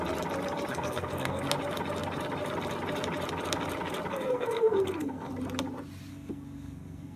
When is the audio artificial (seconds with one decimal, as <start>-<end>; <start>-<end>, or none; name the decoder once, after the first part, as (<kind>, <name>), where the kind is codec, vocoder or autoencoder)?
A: 0.7-1.4 (codec, SNAC); 4.1-5.3; 6.1-7.2